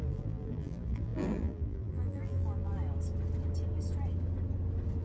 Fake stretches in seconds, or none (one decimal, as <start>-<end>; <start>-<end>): 0.0-2.7